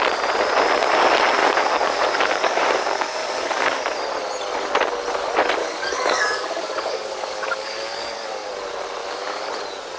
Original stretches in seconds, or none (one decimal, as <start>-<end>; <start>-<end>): 0.0-1.4; 3.8-5.6; 8.5-9.0; 9.5-10.0